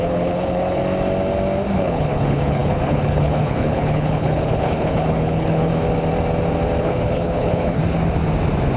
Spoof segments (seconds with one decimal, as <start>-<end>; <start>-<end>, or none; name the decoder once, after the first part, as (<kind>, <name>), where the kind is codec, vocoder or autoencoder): 0.0-0.8 (codec, HILCodec); 1.8-5.7; 6.8-7.8